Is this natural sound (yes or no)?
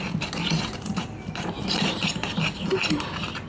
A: yes